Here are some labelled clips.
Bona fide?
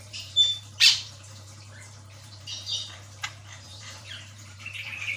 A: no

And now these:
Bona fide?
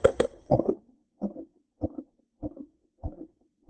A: no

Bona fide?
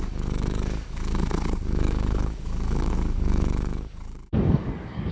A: no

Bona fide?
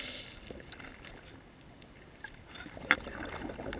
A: yes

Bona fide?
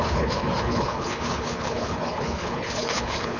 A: no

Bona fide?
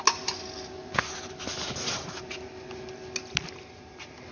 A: yes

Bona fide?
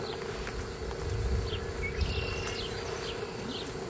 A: yes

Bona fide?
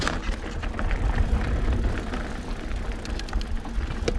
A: yes